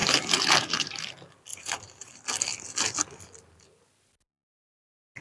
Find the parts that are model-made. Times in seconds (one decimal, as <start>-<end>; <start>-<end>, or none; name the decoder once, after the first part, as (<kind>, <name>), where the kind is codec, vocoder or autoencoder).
0.0-1.1 (vocoder, BigVGAN v2); 1.5-2.1

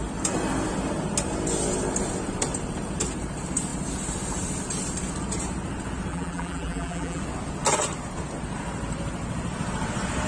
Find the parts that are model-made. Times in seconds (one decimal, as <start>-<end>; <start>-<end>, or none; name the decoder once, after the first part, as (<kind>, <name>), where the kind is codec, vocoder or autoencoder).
6.1-7.2 (vocoder, BigVGAN v2)

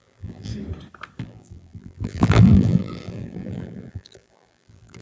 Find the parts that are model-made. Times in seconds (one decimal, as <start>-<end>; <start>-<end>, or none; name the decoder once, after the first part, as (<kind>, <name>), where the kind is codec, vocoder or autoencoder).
0.0-0.5 (vocoder, BigVGAN v2); 1.2-5.0

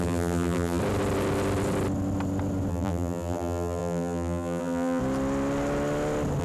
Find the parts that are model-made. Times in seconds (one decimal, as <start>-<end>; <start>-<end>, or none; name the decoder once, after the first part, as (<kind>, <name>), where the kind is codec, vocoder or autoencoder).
0.0-0.8 (vocoder, BigVGAN v2); 2.7-5.0

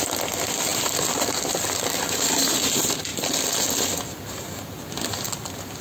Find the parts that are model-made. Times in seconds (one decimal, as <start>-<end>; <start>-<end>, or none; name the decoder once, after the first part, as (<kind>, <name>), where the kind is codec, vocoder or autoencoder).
0.7-2.5 (vocoder, BigVGAN v2); 3.1-3.6